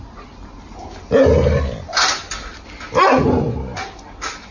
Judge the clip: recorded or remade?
recorded